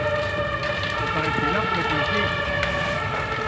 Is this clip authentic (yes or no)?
yes